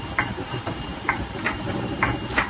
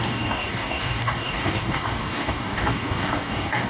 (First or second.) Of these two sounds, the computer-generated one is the second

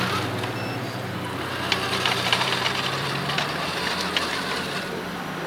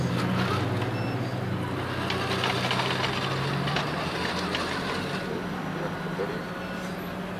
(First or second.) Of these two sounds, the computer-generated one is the first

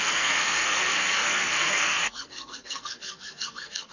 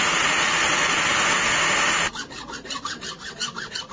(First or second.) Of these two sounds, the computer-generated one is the first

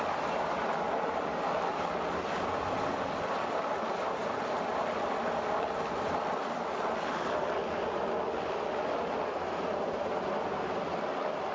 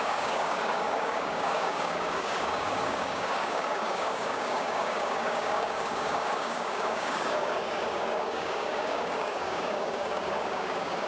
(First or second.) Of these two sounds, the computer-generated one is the second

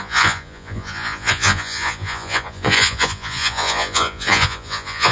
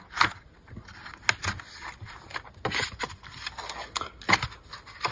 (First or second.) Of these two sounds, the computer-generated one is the first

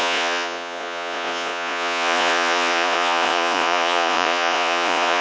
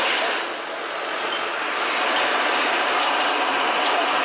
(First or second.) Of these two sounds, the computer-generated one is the first